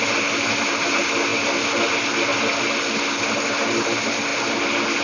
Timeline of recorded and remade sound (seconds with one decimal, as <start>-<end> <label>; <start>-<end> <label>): 0.0-5.0 recorded